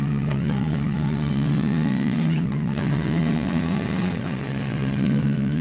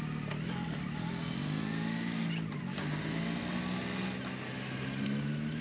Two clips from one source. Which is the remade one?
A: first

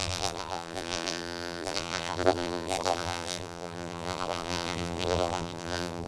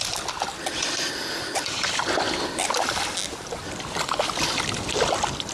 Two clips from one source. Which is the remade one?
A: first